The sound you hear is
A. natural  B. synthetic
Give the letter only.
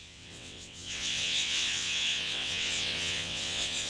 B